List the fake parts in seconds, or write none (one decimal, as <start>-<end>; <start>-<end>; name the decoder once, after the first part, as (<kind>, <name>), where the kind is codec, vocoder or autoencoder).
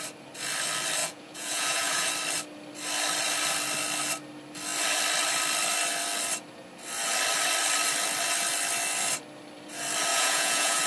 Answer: 1.0-2.1 (vocoder, Vocos); 10.1-10.9